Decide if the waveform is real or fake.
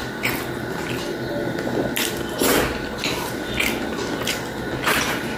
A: real